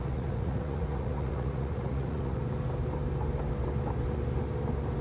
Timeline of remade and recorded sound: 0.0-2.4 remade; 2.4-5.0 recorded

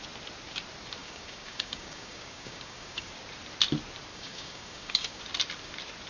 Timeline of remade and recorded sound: 0.0-1.0 recorded; 1.0-3.1 remade; 3.1-4.1 recorded; 4.1-5.2 remade; 5.2-6.1 recorded